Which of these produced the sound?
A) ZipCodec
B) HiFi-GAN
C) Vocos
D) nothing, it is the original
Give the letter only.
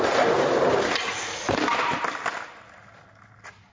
D